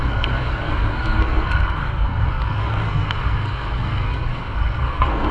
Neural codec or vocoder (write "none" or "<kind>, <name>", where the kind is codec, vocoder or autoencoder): codec, SNAC